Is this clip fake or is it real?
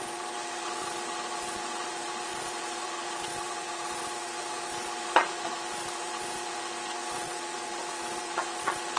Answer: fake